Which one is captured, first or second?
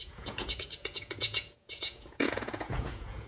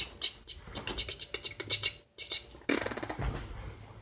second